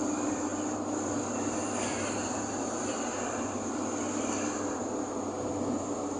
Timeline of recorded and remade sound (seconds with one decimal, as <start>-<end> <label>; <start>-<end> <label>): 0.0-6.2 recorded